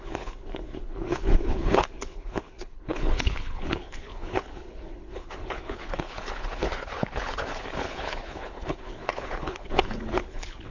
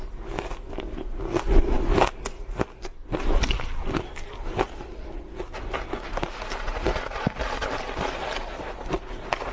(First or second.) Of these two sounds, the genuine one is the second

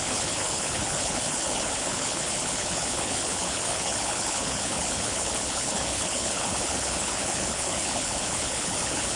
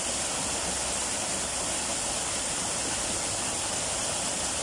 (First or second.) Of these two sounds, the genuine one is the second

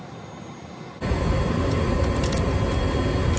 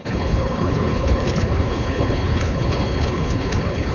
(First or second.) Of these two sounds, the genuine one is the first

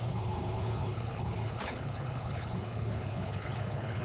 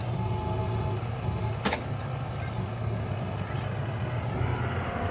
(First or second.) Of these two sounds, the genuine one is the second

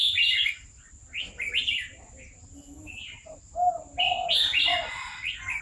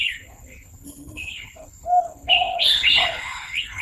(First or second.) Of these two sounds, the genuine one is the first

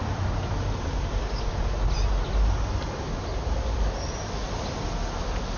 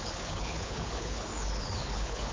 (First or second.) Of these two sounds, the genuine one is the first